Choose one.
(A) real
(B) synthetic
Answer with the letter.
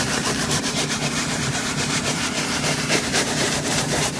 B